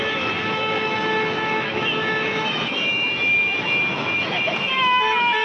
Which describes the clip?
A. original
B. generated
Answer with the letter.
B